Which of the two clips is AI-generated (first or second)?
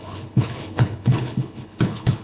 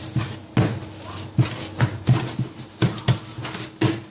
first